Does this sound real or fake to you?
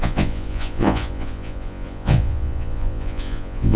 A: fake